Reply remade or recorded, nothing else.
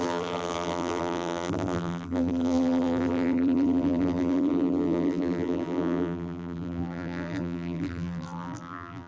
remade